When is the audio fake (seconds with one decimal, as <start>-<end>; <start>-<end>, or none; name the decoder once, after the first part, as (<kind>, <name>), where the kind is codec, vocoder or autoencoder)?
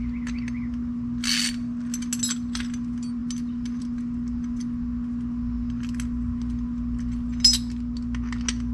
none